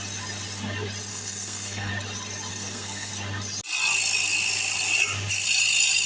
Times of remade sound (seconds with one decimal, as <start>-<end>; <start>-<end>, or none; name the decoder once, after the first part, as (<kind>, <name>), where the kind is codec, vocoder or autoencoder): 1.1-1.9 (codec, SNAC); 2.5-3.1